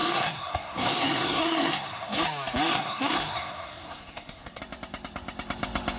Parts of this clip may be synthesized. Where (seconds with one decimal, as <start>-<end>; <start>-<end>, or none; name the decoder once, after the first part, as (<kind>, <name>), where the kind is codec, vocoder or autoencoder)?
0.0-2.2 (codec, SNAC); 2.7-4.6